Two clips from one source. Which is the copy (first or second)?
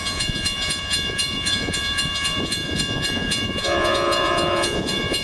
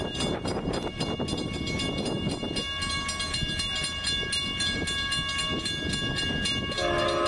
first